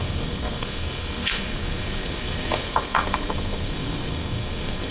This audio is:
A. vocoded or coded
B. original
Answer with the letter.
A